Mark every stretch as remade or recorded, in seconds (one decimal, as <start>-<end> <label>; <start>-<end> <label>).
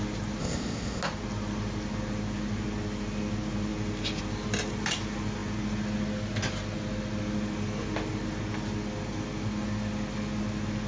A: 0.0-0.4 recorded; 0.4-1.0 remade; 1.0-10.9 recorded